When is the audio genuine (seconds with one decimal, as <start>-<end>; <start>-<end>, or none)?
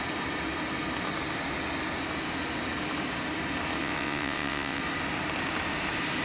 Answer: 0.0-3.8; 4.8-6.2